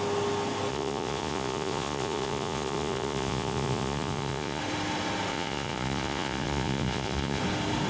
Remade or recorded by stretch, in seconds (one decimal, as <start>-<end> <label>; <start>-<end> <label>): 0.0-0.7 recorded; 0.7-4.6 remade; 4.6-5.3 recorded; 5.3-7.4 remade; 7.4-7.9 recorded